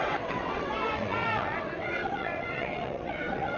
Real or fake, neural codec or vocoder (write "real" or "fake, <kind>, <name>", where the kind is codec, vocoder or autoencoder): fake, vocoder, WaveNeXt